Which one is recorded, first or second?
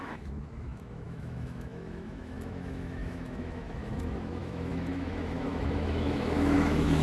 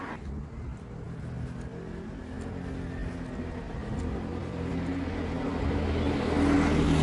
second